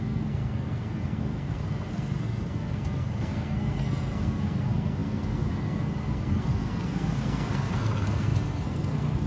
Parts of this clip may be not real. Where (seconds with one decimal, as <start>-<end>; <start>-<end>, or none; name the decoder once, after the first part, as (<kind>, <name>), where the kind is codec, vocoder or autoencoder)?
0.0-9.3 (codec, SNAC)